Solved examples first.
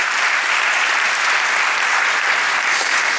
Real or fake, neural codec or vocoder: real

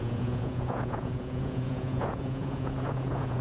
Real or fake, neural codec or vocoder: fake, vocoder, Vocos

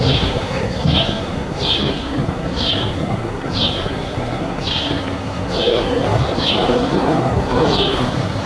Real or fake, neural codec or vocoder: fake, codec, SNAC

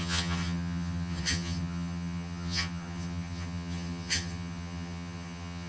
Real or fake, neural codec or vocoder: fake, vocoder, HiFi-GAN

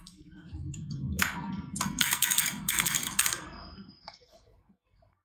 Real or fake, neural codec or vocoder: fake, codec, SNAC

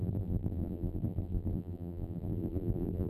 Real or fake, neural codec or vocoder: fake, vocoder, BigVGAN v2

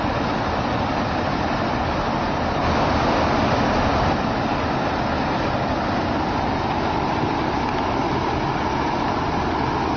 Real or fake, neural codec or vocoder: real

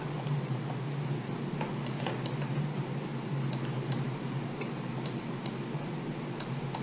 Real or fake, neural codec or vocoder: real